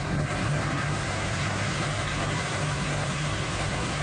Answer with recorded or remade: remade